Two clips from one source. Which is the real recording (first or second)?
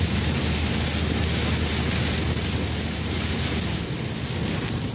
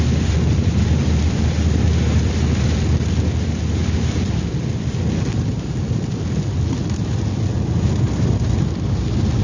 first